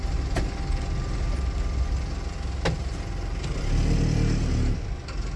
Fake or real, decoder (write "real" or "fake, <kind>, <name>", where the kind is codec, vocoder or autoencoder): real